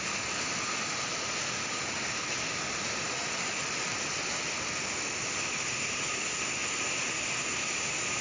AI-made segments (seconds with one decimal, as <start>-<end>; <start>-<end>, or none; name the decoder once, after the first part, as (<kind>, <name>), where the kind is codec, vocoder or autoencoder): 3.2-5.8 (vocoder, BigVGAN v2)